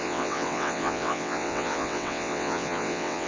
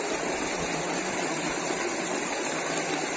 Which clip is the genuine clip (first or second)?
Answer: second